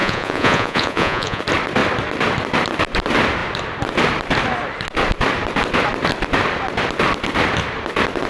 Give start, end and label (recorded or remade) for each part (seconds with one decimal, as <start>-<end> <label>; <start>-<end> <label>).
0.0-1.4 remade; 1.4-8.3 recorded